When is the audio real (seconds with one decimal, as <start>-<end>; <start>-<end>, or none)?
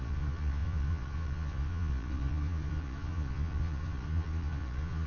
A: none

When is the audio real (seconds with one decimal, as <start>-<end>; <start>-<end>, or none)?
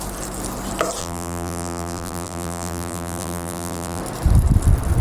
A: 0.0-1.0; 4.0-5.0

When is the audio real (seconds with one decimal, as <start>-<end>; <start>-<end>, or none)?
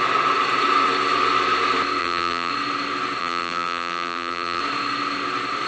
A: 0.0-2.0; 2.5-3.2; 4.6-5.7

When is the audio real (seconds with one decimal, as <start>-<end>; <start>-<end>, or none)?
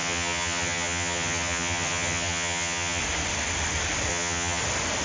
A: 3.0-4.1; 4.6-5.0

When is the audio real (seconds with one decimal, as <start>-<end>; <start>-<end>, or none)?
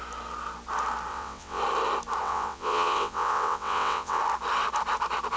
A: 0.0-1.1; 1.6-2.2; 4.2-5.4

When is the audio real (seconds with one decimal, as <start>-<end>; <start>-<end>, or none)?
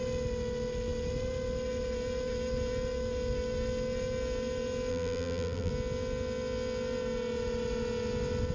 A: 0.0-4.9; 5.7-8.5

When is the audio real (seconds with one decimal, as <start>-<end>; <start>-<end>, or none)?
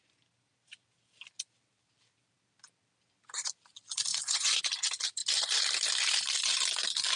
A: 0.0-4.1; 4.6-7.2